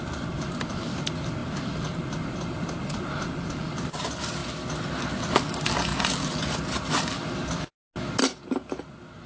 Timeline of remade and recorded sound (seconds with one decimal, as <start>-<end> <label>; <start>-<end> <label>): 0.0-9.3 recorded